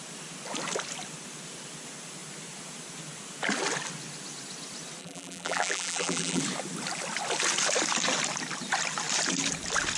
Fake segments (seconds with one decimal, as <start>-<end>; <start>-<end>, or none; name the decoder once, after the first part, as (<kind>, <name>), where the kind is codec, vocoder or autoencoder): 5.0-6.4 (vocoder, BigVGAN v2)